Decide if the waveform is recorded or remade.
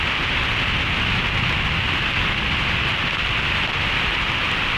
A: recorded